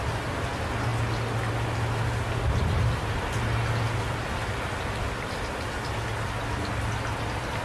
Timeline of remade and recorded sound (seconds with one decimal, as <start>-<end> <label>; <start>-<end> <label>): 0.0-7.6 recorded